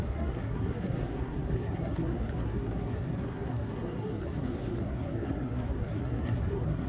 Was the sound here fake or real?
fake